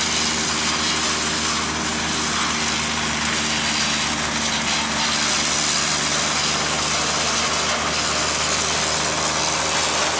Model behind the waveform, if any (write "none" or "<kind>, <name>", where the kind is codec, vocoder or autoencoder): none